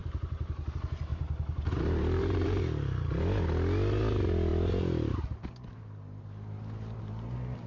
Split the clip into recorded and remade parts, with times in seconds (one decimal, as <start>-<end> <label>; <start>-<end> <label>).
0.0-0.7 remade; 0.7-1.1 recorded; 1.1-2.6 remade; 2.6-7.7 recorded